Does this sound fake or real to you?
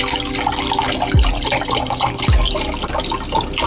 real